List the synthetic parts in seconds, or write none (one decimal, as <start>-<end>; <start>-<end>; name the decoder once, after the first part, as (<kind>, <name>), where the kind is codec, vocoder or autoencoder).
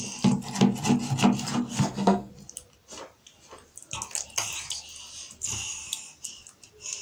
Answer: 1.7-2.3 (codec, SNAC)